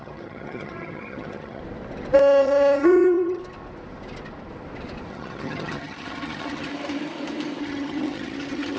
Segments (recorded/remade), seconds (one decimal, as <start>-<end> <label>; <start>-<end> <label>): 0.0-1.6 remade; 1.6-2.2 recorded; 2.2-3.4 remade; 3.4-5.1 recorded; 5.1-6.7 remade; 6.7-7.6 recorded; 7.6-8.8 remade